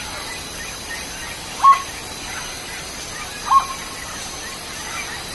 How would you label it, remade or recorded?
recorded